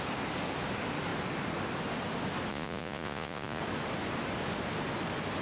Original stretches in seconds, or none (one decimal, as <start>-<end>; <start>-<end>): 0.0-2.5; 3.6-5.4